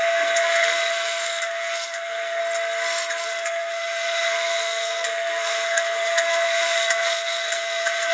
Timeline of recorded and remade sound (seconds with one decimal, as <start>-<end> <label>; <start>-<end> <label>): 0.0-2.4 remade; 2.4-3.2 recorded; 3.2-8.1 remade